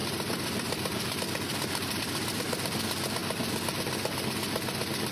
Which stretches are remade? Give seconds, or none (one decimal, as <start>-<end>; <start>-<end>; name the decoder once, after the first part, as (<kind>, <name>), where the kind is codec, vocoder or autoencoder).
0.0-1.2 (vocoder, BigVGAN v2); 1.8-2.4